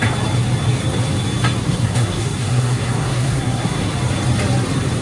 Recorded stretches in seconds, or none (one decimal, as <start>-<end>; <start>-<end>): 0.0-1.6; 3.9-5.0